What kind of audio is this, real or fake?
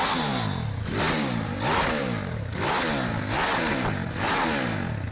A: real